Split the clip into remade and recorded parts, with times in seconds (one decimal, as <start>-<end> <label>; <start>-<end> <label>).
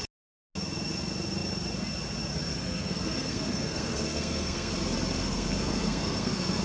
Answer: 0.0-2.5 recorded; 2.5-4.7 remade; 4.7-5.2 recorded; 5.2-6.6 remade